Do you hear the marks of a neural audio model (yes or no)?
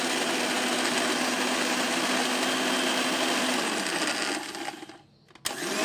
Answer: no